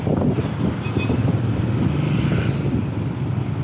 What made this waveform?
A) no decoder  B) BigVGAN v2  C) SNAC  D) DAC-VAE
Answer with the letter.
A